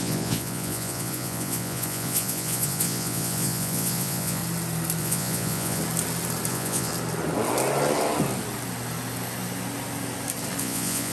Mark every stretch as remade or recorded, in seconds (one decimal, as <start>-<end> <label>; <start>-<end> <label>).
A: 0.0-4.4 remade; 4.4-5.0 recorded; 5.0-5.8 remade; 5.8-6.5 recorded; 6.5-6.9 remade; 6.9-10.6 recorded; 10.6-11.1 remade